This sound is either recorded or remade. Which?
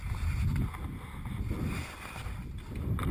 recorded